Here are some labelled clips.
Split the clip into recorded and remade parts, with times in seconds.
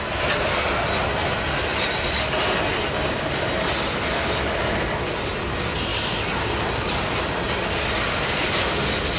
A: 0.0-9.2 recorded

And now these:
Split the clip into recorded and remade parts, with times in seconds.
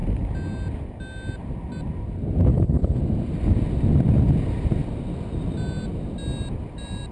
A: 0.0-2.5 recorded; 2.5-3.0 remade; 3.0-7.1 recorded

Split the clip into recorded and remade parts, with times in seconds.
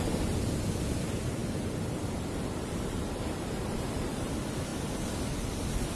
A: 0.0-1.4 recorded; 1.4-4.3 remade; 4.3-6.0 recorded